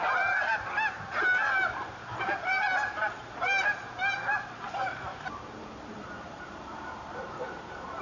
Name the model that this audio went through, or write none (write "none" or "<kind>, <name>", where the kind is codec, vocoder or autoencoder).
vocoder, BigVGAN v2